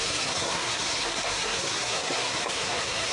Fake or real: fake